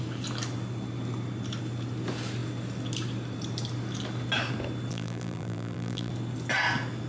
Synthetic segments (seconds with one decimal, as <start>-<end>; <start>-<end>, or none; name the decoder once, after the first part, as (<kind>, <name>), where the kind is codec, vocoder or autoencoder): 4.9-6.1 (vocoder, BigVGAN v2)